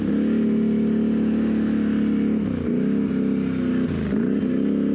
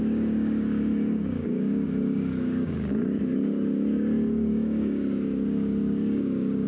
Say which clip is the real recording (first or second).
first